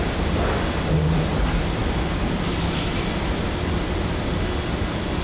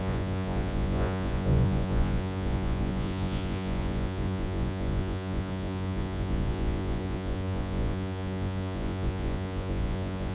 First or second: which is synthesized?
second